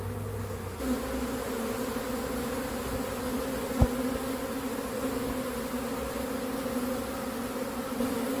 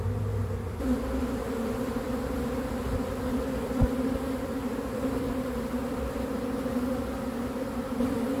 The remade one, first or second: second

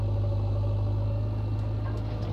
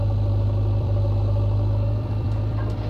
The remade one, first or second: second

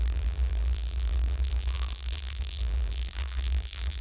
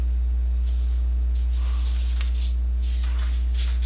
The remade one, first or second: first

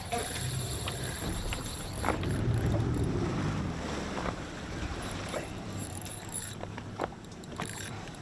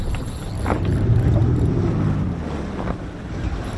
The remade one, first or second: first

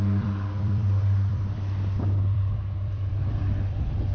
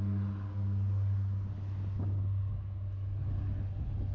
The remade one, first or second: first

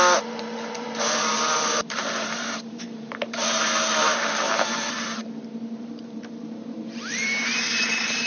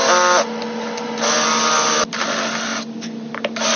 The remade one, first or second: first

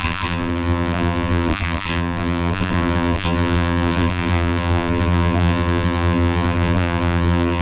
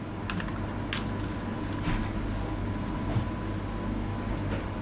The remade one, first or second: first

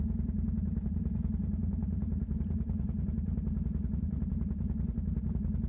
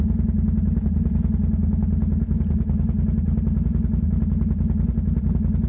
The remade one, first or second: first